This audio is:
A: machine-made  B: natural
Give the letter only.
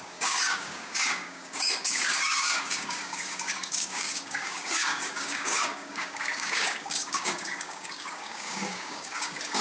A